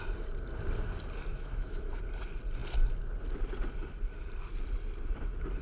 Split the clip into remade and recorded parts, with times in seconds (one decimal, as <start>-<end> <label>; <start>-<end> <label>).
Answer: 0.0-1.3 recorded; 1.3-2.0 remade; 2.0-5.6 recorded